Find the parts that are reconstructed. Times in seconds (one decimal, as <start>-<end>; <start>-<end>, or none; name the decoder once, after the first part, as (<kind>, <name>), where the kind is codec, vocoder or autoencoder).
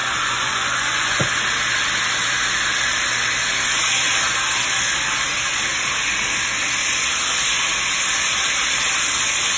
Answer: 0.0-1.4 (vocoder, Vocos)